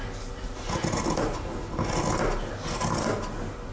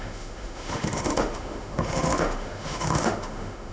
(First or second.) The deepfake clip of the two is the second